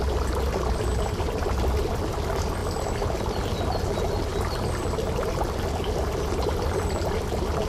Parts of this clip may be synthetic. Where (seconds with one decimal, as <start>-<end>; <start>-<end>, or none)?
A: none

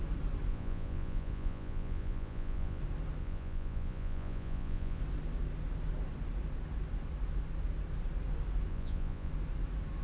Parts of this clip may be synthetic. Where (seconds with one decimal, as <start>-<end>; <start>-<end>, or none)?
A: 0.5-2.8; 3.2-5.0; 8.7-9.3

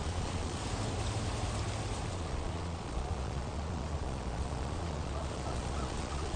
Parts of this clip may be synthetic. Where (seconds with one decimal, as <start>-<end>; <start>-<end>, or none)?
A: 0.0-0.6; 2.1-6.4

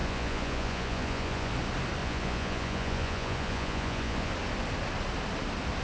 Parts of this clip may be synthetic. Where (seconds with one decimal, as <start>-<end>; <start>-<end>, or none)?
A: 0.0-1.5; 2.0-4.3

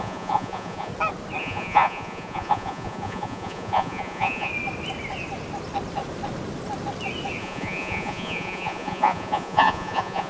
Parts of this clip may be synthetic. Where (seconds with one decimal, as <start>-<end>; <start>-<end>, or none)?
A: 0.0-0.9; 1.4-4.5; 7.4-10.3

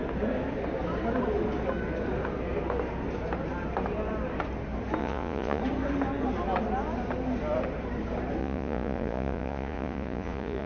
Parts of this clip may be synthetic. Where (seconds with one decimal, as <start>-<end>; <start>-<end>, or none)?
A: 5.0-5.6; 8.4-10.7